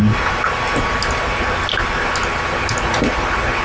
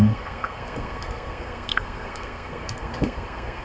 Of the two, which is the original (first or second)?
first